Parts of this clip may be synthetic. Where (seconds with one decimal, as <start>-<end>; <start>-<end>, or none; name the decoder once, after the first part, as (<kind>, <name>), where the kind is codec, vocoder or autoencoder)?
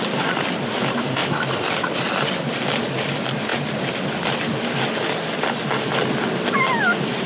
none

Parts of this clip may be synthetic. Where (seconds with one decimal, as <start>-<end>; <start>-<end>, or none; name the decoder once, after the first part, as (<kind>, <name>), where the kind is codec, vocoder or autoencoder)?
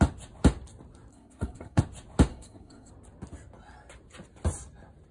1.1-1.8 (codec, SNAC); 2.3-2.9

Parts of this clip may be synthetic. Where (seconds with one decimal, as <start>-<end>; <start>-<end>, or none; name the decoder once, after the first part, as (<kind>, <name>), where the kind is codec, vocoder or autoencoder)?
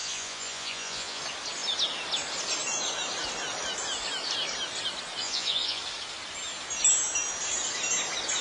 0.0-1.2 (vocoder, Vocos); 5.2-5.8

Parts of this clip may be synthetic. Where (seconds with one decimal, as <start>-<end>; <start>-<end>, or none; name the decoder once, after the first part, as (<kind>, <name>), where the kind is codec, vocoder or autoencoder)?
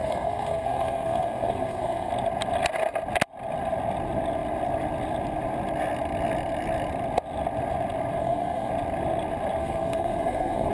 0.0-2.1 (codec, SNAC); 8.2-8.7; 9.6-10.7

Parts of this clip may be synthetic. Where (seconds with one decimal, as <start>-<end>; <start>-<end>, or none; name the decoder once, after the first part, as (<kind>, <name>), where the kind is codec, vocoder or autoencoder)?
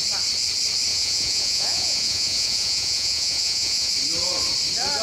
0.9-3.9 (vocoder, Vocos)